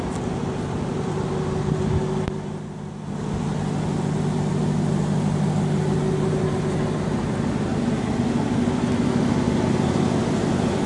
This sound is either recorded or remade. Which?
recorded